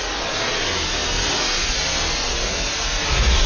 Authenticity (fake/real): real